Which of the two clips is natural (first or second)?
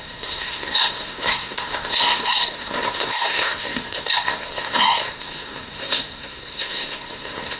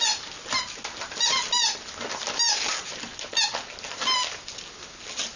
second